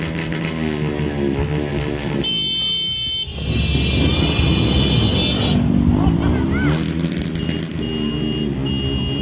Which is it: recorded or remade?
recorded